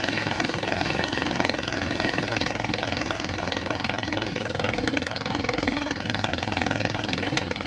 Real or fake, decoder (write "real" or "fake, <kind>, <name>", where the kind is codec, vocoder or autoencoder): fake, codec, SNAC